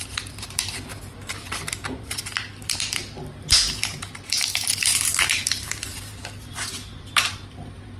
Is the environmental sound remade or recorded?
remade